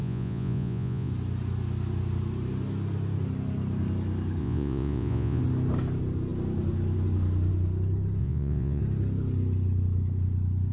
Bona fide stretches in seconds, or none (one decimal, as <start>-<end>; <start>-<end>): 1.1-4.4; 5.4-8.2; 8.8-10.7